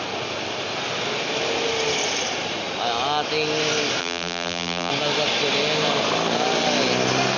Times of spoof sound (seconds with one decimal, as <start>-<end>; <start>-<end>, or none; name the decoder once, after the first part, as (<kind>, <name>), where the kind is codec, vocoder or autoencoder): 4.0-4.9 (vocoder, BigVGAN v2)